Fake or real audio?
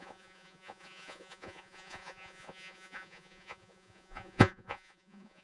fake